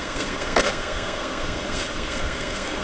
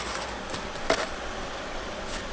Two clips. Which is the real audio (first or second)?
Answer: second